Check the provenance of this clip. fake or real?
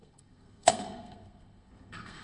fake